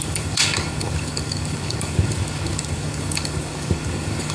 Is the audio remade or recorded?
remade